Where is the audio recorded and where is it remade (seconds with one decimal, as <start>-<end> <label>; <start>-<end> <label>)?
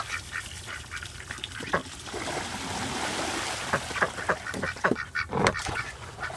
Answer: 0.0-5.6 recorded; 5.6-6.4 remade